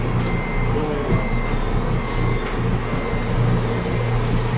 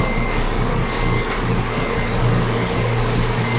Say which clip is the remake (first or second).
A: second